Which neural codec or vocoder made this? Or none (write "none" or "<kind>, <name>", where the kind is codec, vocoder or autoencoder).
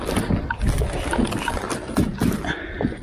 none